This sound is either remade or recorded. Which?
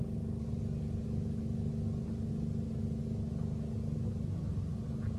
recorded